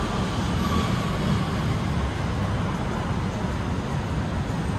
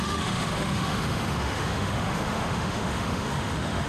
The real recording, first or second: first